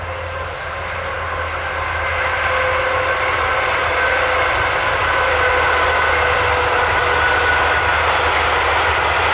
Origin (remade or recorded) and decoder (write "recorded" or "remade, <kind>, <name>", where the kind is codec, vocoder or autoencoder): recorded